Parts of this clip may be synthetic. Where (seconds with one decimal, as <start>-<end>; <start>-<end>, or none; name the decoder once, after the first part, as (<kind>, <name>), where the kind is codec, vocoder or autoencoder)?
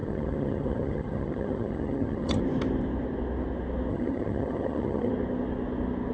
0.0-2.4 (vocoder, HiFi-GAN); 3.9-5.1